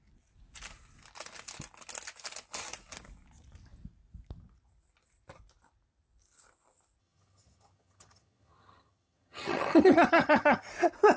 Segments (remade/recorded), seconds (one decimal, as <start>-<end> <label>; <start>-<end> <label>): 0.0-7.0 recorded; 7.0-10.7 remade; 10.7-11.2 recorded